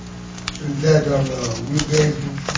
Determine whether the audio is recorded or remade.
recorded